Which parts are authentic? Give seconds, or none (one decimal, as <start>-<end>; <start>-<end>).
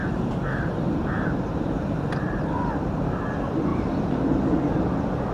3.2-5.3